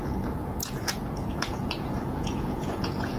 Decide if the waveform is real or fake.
fake